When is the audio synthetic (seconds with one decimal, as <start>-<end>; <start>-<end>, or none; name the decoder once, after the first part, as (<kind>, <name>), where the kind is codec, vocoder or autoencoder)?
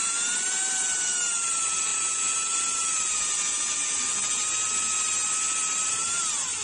none